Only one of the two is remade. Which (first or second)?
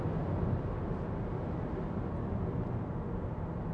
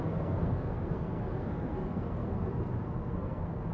second